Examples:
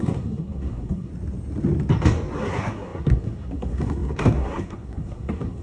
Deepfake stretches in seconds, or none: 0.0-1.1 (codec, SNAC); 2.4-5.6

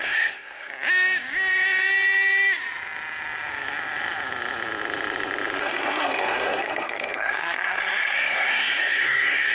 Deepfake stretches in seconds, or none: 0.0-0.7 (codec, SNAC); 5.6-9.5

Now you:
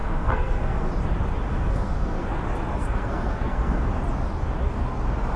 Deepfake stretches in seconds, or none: 0.0-0.9 (codec, SNAC); 1.5-2.3; 2.7-3.9